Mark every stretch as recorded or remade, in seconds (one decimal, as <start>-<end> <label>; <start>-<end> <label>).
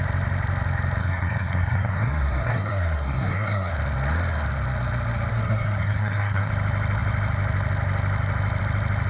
0.0-1.0 recorded; 1.0-3.7 remade; 3.7-5.3 recorded; 5.3-6.5 remade; 6.5-9.1 recorded